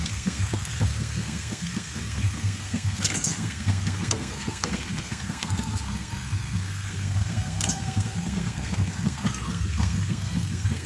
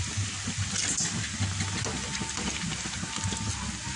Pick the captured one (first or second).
second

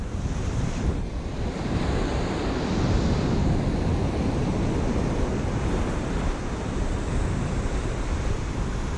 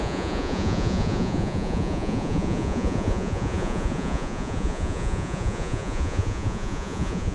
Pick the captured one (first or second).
first